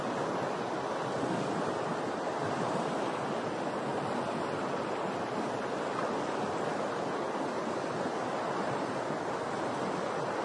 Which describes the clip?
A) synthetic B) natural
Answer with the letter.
B